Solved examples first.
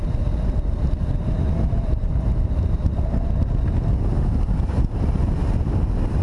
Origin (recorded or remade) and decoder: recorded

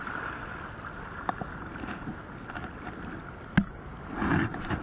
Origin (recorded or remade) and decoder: recorded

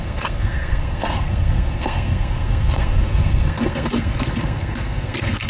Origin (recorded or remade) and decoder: remade, codec, SNAC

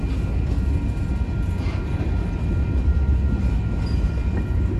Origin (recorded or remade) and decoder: recorded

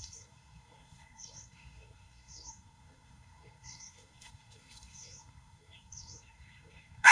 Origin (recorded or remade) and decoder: remade, codec, SNAC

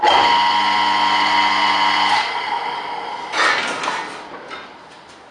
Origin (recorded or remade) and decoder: recorded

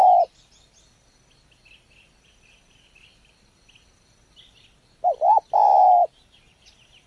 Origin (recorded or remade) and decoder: recorded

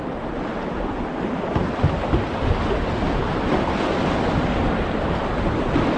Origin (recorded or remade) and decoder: recorded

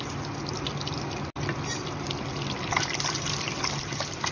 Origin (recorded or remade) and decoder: recorded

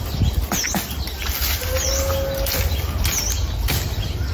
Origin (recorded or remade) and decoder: recorded